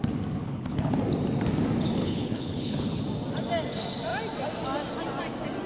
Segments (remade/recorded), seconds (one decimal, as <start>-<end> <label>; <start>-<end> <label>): 0.0-0.4 recorded; 0.4-0.9 remade; 0.9-2.0 recorded; 2.0-3.0 remade; 3.0-5.7 recorded